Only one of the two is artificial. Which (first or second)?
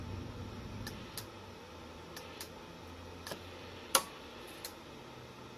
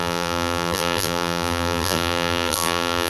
second